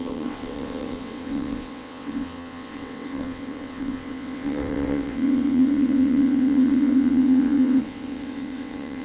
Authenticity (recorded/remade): remade